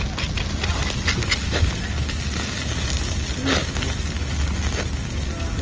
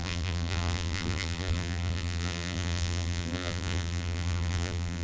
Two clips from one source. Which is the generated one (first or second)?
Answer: second